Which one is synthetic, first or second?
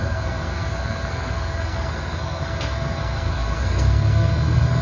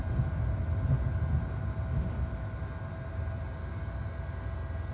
first